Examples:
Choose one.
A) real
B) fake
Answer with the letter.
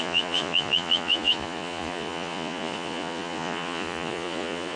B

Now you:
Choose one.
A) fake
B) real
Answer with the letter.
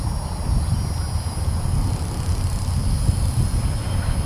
B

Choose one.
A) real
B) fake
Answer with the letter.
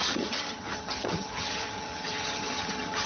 B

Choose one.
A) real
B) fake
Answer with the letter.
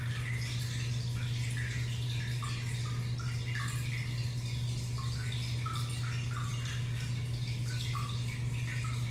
A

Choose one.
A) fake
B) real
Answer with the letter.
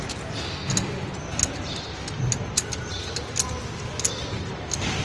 B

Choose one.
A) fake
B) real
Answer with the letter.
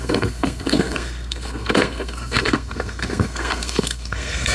A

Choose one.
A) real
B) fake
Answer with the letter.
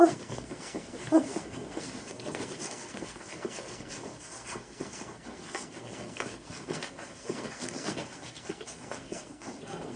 B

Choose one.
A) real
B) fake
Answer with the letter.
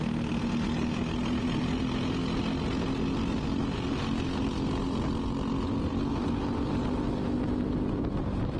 A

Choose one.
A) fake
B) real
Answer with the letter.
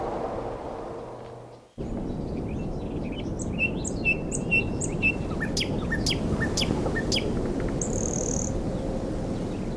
B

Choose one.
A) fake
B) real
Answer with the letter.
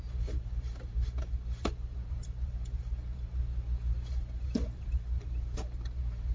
A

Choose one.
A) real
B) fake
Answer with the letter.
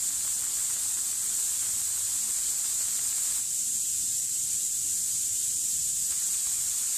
A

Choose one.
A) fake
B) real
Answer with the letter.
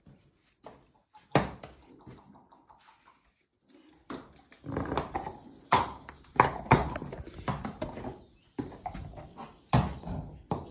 B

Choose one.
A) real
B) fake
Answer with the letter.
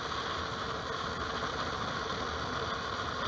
A